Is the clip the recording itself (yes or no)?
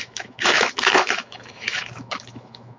no